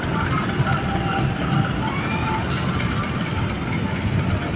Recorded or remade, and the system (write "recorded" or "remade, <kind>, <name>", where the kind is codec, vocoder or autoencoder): recorded